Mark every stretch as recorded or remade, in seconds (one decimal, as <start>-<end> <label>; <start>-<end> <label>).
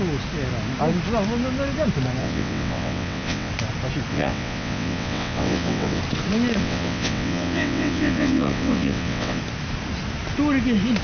0.0-2.2 recorded; 2.2-3.5 remade; 3.5-4.1 recorded; 4.1-6.0 remade; 6.0-6.6 recorded; 6.6-9.4 remade; 9.4-11.0 recorded